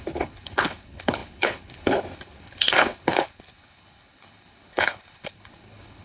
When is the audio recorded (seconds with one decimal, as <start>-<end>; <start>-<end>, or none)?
none